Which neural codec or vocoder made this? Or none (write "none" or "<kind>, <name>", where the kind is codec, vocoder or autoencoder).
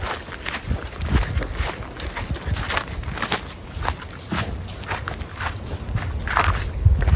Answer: none